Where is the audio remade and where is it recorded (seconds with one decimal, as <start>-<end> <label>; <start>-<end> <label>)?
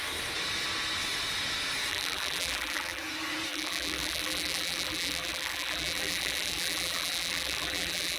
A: 0.0-1.9 recorded; 1.9-3.0 remade; 3.0-3.5 recorded; 3.5-8.2 remade